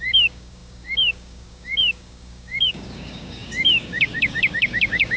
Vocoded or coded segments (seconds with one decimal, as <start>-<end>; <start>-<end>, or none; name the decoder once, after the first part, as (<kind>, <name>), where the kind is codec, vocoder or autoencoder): 0.0-5.2 (codec, DAC)